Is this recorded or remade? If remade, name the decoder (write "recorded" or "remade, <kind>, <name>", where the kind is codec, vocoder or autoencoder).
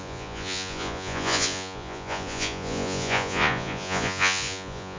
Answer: remade, vocoder, Vocos